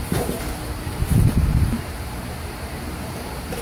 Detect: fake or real fake